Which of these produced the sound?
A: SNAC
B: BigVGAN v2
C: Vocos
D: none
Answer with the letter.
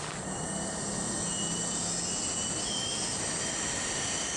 D